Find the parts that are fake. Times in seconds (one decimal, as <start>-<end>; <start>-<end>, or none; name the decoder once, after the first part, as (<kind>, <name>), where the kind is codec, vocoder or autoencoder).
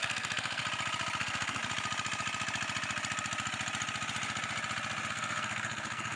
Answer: 0.0-0.6 (codec, SNAC); 1.2-1.6; 5.1-6.2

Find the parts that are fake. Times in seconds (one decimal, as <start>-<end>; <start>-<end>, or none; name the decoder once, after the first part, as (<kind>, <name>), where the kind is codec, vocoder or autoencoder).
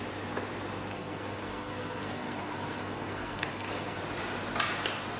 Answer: 0.9-4.0 (codec, SNAC)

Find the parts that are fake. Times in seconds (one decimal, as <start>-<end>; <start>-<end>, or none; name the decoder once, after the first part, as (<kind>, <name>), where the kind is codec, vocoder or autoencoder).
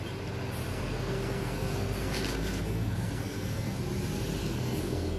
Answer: 0.7-3.8 (codec, SNAC); 4.4-5.2